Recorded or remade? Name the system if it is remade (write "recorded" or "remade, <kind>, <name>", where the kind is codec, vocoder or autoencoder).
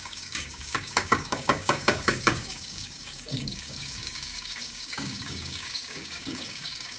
remade, codec, DAC